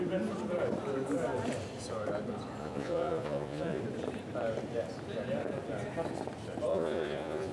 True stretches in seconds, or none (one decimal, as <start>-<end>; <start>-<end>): 0.0-2.6; 3.8-6.7